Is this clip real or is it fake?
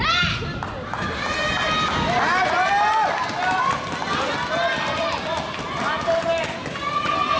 real